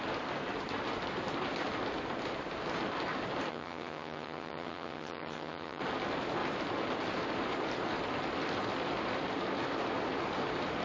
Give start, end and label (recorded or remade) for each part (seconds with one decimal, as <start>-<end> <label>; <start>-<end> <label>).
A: 0.0-3.5 recorded; 3.5-5.8 remade; 5.8-10.8 recorded